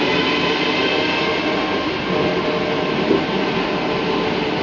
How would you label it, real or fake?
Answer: real